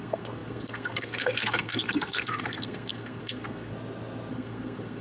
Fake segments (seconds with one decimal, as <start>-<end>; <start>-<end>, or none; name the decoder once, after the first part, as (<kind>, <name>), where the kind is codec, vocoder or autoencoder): 0.0-3.7 (codec, SNAC); 4.3-5.0